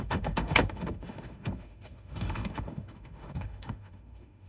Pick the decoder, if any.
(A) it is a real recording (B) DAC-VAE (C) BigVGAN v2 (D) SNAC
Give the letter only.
B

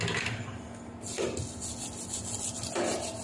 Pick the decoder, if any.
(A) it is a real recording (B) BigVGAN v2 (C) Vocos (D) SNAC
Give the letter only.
A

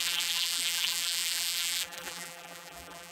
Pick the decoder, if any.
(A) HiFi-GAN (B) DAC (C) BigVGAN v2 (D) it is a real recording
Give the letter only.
C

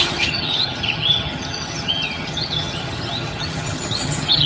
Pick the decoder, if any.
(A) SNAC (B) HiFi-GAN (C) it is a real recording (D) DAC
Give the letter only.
B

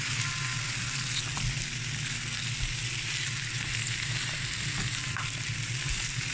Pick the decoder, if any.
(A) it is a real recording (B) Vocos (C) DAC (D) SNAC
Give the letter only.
A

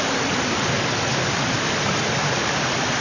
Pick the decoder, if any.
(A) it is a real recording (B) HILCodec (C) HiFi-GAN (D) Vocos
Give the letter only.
A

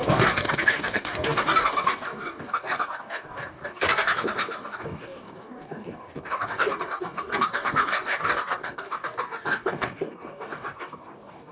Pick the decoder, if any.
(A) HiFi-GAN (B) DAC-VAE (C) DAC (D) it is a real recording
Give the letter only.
C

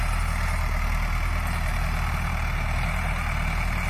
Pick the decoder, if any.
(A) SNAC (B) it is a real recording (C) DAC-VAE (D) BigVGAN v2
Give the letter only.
B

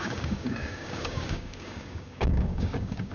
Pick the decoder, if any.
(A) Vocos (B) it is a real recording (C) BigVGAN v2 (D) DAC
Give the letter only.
D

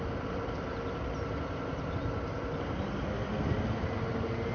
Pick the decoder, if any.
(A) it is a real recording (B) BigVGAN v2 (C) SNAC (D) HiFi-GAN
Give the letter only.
B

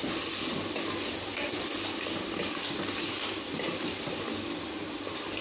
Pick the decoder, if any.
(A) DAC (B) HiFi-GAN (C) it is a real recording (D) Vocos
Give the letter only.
C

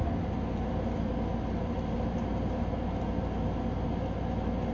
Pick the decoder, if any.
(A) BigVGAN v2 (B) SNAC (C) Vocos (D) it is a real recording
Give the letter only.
D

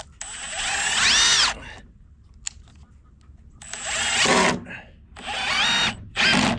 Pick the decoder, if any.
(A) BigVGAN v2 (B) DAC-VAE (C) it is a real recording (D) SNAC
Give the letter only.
C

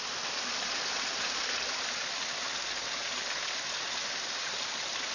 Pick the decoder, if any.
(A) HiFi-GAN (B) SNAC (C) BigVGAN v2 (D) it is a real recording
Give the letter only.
D